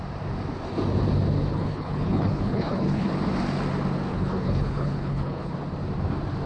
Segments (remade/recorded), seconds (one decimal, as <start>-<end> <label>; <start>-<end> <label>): 0.0-1.5 recorded; 1.5-3.1 remade; 3.1-4.1 recorded; 4.1-5.5 remade; 5.5-6.5 recorded